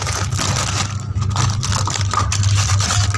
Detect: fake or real real